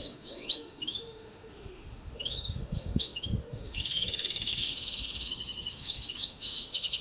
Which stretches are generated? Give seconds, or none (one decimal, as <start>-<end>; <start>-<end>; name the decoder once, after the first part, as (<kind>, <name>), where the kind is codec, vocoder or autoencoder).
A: 0.0-7.0 (autoencoder, DAC-VAE)

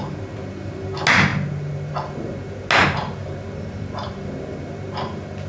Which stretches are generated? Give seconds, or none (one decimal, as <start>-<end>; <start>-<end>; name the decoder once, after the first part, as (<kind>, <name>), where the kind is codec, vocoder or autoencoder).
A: 3.2-4.7 (vocoder, BigVGAN v2)

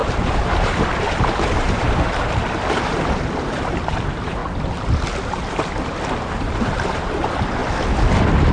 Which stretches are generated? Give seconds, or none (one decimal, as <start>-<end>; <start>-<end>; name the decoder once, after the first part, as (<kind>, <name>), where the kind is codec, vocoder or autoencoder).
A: 0.0-4.4 (vocoder, BigVGAN v2); 6.4-7.6